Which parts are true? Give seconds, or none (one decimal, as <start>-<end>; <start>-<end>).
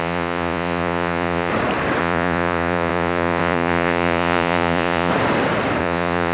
1.5-2.0; 5.1-5.8